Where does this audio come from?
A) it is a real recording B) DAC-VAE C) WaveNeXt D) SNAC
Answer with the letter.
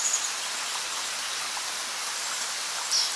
A